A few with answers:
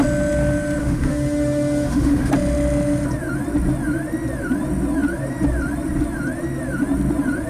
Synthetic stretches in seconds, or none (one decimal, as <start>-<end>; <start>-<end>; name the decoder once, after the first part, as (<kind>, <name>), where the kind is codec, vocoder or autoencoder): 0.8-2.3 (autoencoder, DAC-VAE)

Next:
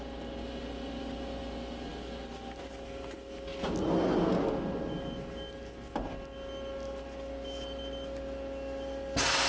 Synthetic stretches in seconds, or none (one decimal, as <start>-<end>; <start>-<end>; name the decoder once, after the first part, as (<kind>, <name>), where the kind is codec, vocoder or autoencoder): none

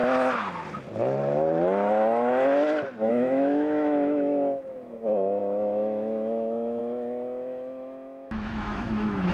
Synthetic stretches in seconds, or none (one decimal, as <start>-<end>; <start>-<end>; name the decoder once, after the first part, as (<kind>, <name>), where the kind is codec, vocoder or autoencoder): 3.1-9.3 (autoencoder, DAC-VAE)

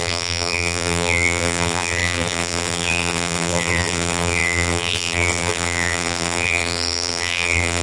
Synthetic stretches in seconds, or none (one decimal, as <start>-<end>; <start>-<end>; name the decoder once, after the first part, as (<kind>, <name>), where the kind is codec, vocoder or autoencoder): 0.0-7.8 (vocoder, BigVGAN v2)

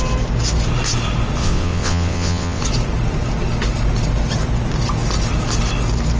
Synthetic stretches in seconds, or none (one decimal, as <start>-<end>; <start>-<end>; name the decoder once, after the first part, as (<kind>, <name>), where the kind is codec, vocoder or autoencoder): 1.4-2.6 (vocoder, WaveNeXt)

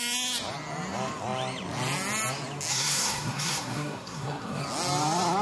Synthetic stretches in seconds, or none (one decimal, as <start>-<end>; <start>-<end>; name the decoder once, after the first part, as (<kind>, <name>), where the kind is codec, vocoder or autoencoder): 2.7-4.6 (codec, SNAC)